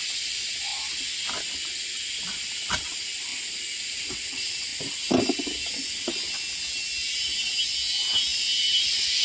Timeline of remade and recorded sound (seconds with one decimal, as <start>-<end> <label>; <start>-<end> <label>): 0.0-0.7 remade; 0.7-2.1 recorded; 2.1-3.3 remade; 3.3-3.9 recorded; 3.9-4.7 remade; 4.7-7.6 recorded; 7.6-9.2 remade